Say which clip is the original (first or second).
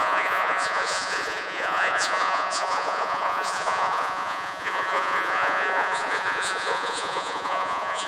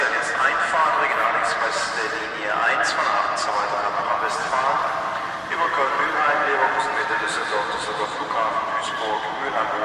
second